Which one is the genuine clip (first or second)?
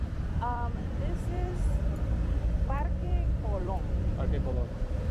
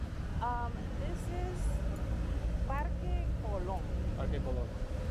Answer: second